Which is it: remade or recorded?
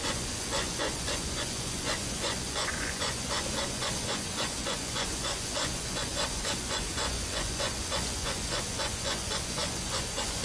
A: remade